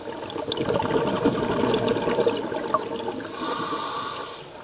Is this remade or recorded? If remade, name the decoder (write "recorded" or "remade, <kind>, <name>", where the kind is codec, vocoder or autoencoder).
recorded